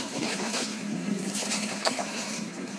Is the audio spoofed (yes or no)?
yes